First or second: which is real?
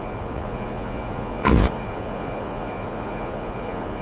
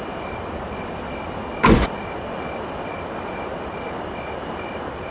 second